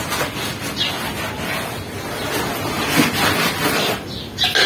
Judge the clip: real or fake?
real